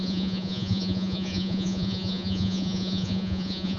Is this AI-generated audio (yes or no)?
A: yes